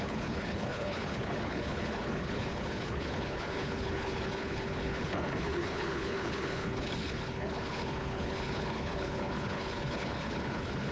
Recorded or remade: remade